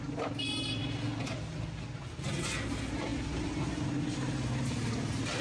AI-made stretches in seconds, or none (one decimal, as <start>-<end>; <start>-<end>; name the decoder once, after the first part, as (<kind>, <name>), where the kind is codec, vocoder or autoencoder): none